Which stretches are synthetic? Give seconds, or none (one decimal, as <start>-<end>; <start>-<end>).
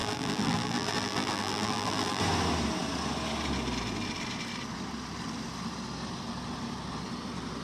0.0-2.2